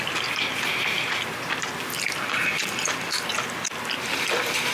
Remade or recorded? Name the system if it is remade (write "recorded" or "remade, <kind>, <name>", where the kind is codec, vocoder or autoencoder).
recorded